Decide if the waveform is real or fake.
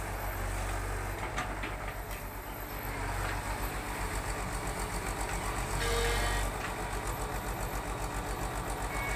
real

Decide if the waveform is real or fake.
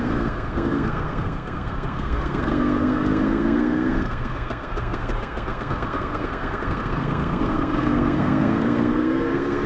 fake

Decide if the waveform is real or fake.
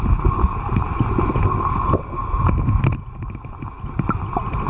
real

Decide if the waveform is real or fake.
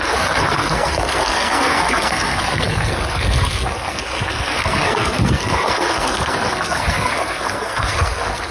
fake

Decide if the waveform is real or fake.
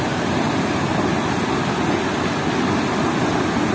real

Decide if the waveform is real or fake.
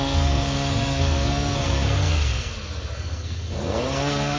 fake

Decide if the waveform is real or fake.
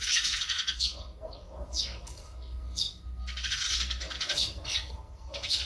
fake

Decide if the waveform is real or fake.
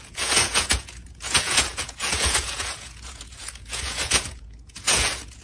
fake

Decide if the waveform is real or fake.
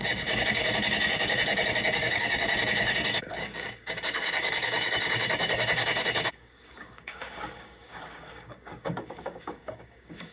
fake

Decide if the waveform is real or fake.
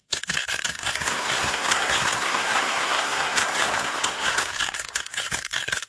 fake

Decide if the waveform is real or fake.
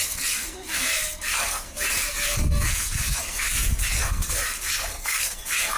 fake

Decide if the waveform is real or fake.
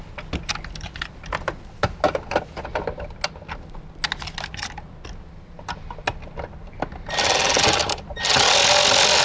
real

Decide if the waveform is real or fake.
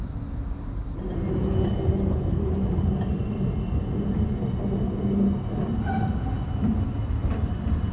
real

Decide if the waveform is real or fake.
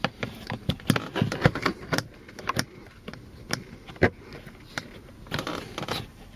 real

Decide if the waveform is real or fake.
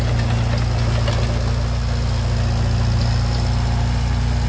real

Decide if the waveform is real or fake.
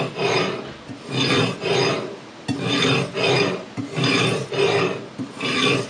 real